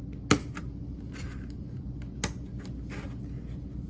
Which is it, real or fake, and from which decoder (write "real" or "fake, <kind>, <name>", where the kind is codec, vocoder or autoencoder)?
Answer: real